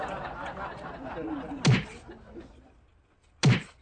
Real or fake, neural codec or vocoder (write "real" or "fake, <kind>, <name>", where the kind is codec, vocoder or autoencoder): real